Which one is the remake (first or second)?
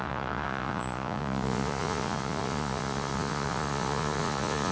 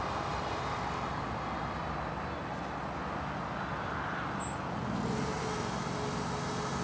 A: first